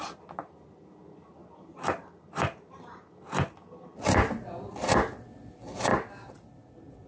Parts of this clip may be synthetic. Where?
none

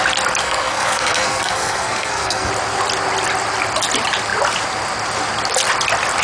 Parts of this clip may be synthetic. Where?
0.4-2.5 (codec, SNAC)

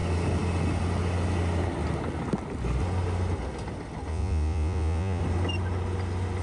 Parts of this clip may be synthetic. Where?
4.1-5.2 (vocoder, Vocos)

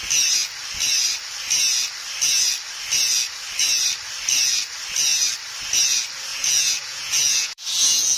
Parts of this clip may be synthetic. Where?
6.3-8.2 (vocoder, Vocos)

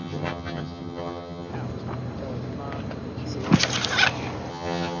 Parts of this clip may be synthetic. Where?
0.0-1.5 (vocoder, HiFi-GAN); 4.5-5.0

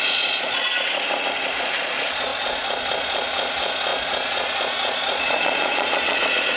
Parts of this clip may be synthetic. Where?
0.0-0.7 (vocoder, Vocos); 1.6-6.6

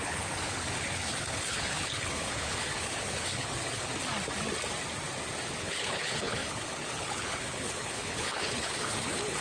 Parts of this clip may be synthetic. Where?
0.0-3.9 (codec, HILCodec); 5.6-9.4